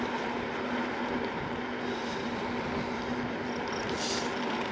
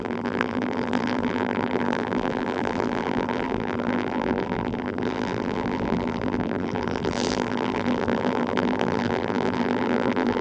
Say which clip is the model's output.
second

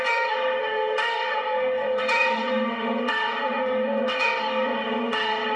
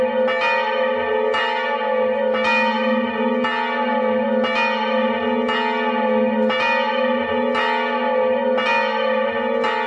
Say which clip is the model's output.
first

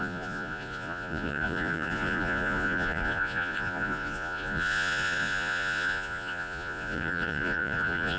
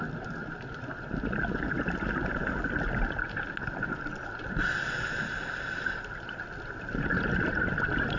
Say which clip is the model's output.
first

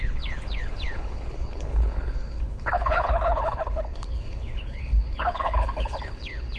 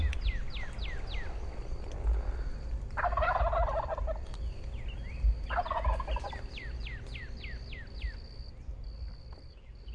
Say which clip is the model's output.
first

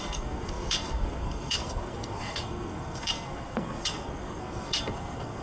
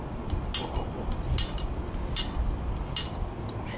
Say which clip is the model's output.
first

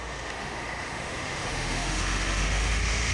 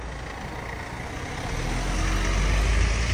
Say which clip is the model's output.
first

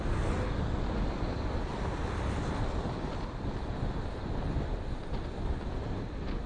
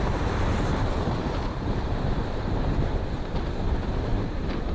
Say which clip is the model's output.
second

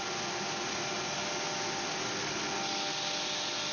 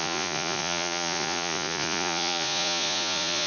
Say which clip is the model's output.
second